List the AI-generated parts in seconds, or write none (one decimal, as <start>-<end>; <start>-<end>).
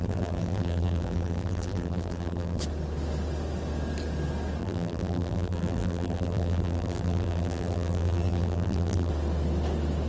0.0-2.6; 4.6-9.1